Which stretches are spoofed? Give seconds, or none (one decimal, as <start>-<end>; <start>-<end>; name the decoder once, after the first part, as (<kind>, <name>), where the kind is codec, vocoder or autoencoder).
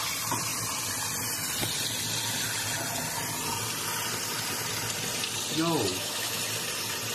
5.9-6.4 (autoencoder, DAC-VAE)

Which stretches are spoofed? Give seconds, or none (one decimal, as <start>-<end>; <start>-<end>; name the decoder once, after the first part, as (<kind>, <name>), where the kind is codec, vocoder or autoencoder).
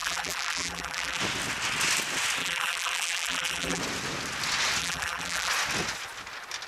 0.0-1.2 (vocoder, BigVGAN v2); 2.4-3.8; 4.8-5.5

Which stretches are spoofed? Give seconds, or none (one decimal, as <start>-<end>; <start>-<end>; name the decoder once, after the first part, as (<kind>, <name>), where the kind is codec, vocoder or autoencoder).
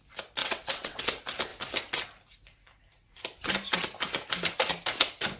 0.4-1.0 (vocoder, WaveNeXt)